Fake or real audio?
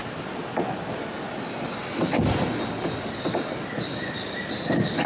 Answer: real